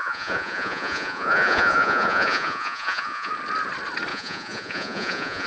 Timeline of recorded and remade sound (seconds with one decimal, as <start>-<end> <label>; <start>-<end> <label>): 0.0-3.3 remade; 3.3-4.1 recorded; 4.1-5.5 remade